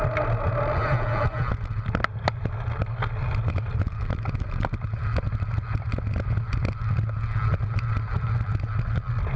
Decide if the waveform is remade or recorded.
recorded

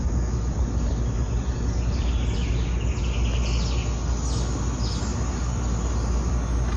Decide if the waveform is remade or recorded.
recorded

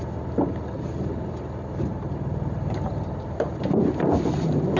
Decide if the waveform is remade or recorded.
remade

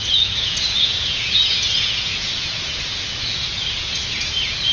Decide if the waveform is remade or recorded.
remade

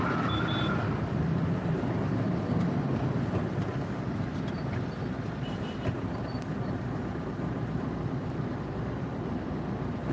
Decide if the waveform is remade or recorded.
remade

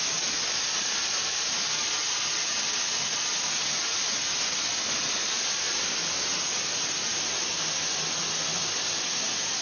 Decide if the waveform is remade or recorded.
recorded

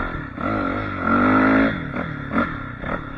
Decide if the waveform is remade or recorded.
recorded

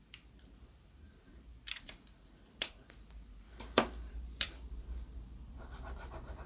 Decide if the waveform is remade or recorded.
remade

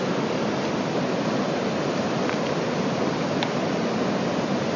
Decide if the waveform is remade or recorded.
recorded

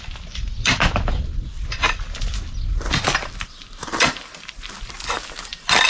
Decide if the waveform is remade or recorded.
recorded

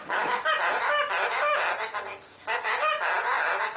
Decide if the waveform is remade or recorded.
recorded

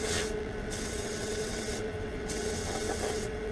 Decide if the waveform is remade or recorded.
remade